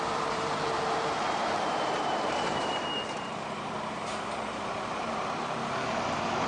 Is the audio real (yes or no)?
no